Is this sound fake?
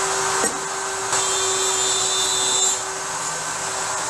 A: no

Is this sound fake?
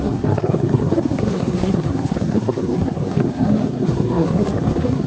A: yes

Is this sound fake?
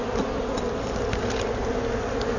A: no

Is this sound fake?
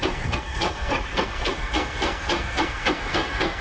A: yes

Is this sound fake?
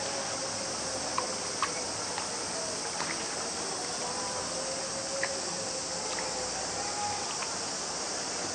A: no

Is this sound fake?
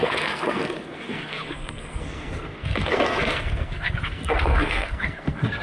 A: yes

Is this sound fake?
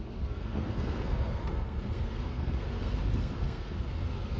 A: yes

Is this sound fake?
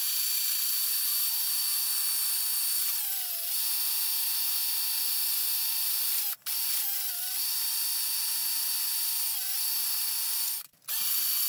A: no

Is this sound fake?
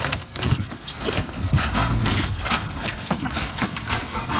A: yes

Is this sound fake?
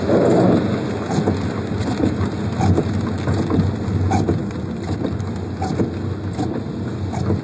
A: no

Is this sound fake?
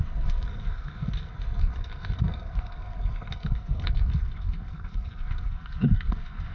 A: yes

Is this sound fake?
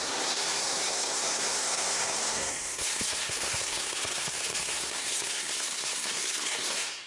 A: yes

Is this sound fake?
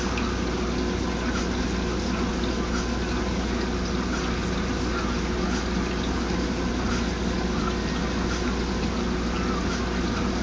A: no